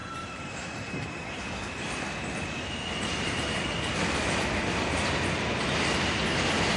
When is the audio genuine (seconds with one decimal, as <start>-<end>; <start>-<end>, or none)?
1.4-6.8